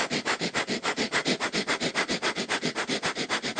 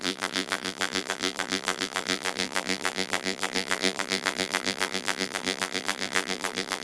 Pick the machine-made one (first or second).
second